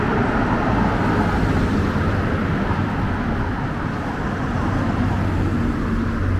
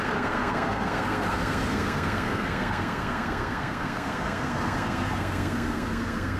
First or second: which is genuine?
first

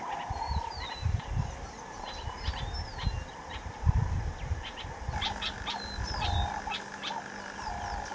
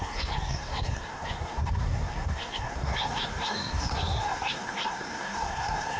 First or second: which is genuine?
first